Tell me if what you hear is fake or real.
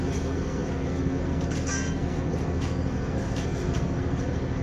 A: fake